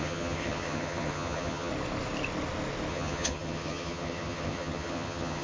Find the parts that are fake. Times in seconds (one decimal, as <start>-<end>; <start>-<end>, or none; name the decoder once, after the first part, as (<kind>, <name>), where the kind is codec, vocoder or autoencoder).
0.0-1.7 (vocoder, HiFi-GAN); 2.9-5.4

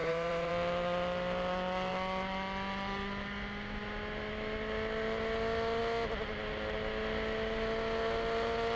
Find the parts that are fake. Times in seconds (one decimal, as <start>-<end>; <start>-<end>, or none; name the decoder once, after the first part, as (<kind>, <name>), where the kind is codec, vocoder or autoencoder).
0.0-0.5 (vocoder, Vocos)